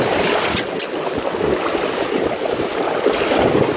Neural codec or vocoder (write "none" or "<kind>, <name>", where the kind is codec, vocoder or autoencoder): none